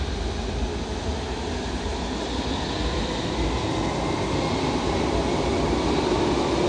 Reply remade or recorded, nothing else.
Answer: recorded